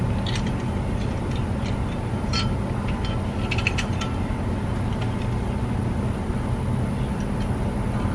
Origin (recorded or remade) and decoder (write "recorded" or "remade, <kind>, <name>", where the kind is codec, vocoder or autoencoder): recorded